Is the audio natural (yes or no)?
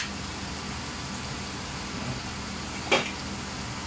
yes